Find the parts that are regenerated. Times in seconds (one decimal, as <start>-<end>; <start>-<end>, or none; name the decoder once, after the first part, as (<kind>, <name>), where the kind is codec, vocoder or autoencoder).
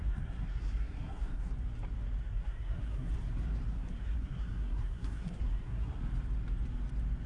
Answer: 0.0-1.5 (codec, SNAC); 2.2-3.1; 3.7-6.0